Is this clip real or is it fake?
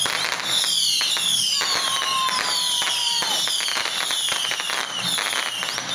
real